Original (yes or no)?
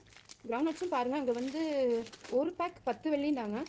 yes